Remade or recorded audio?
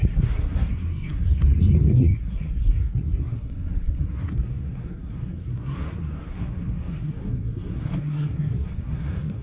remade